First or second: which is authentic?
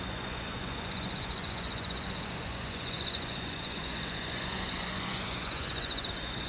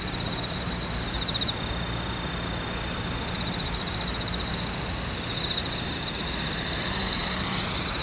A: second